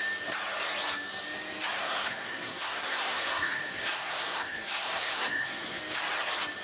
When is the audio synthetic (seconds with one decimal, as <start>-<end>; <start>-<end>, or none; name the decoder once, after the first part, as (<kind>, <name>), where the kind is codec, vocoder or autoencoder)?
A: 1.8-5.8 (codec, SNAC)